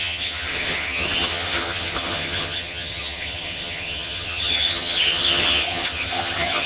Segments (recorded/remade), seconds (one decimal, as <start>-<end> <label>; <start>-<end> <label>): 0.0-6.7 remade